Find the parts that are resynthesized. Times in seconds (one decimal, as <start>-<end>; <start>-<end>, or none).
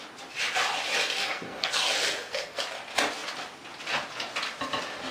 1.2-2.6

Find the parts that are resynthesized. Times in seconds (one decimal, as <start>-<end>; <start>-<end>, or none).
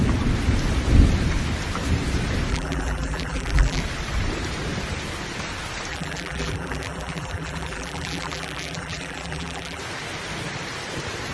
2.5-3.8; 5.9-9.8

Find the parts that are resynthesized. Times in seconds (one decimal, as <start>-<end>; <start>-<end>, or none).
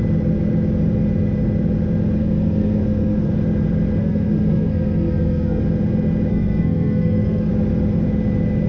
2.2-3.3; 4.0-5.6; 6.3-7.5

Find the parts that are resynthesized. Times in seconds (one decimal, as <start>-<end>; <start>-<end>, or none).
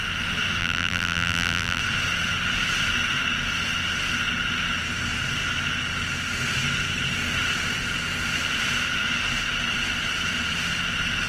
0.6-1.8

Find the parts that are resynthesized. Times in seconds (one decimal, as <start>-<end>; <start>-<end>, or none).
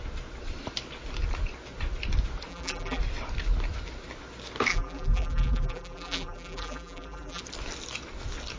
2.5-3.0; 4.7-7.4